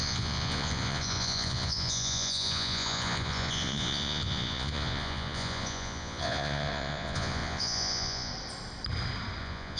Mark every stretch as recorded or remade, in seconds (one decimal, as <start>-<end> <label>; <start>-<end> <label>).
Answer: 0.0-8.3 remade; 8.3-9.4 recorded; 9.4-9.8 remade